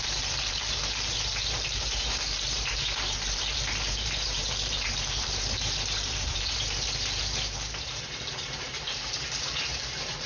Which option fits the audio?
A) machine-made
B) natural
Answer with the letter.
A